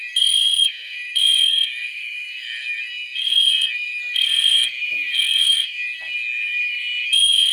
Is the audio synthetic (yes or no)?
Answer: yes